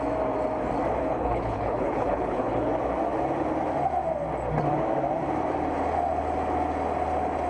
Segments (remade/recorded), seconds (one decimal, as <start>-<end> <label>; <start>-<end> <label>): 0.0-1.0 recorded; 1.0-2.7 remade; 2.7-7.5 recorded